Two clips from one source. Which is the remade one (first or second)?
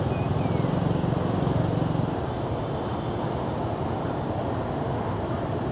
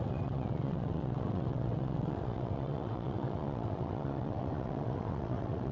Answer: second